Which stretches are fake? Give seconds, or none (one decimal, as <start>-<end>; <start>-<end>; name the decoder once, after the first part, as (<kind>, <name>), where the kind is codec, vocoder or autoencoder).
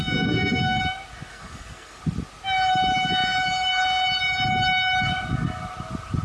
0.0-0.8 (codec, SNAC); 1.3-2.0